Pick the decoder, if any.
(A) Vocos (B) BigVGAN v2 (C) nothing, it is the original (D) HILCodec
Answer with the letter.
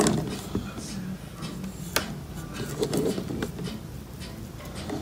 C